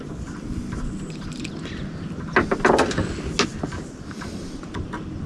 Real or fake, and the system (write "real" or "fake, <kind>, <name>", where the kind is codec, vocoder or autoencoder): real